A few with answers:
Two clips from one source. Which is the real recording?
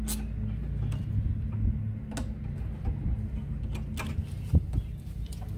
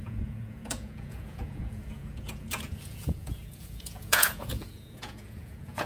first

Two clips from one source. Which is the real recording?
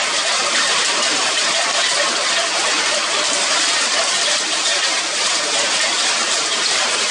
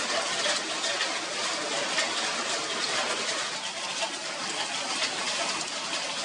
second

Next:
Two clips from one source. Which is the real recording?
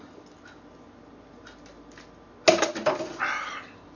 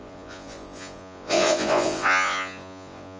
first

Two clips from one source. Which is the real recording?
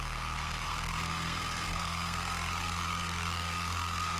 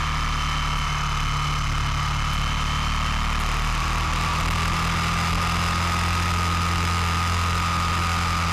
second